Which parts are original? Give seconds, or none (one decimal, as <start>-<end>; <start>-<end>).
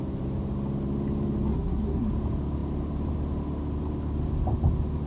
0.0-1.5; 2.1-5.1